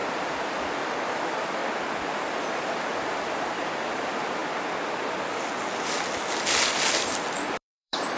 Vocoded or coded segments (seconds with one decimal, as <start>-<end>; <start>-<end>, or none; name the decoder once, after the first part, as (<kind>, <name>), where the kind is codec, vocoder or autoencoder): 0.0-1.6 (vocoder, BigVGAN v2); 2.3-4.4; 6.9-8.2